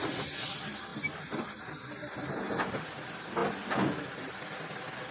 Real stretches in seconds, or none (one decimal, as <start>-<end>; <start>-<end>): 0.0-5.1